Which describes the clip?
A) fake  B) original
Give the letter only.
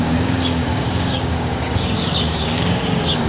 A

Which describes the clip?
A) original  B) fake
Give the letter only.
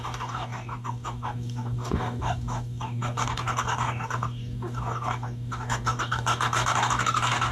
B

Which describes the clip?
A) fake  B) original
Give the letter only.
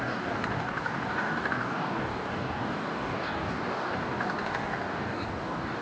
A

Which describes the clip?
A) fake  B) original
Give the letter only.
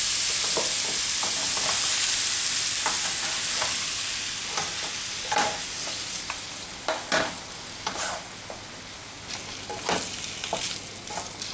B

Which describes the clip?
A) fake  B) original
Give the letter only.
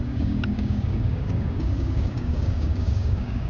A